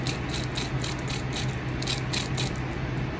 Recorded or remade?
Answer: recorded